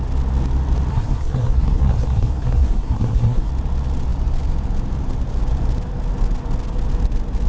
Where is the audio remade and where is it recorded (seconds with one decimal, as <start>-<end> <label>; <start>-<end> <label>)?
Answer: 0.0-0.9 recorded; 0.9-3.5 remade; 3.5-7.5 recorded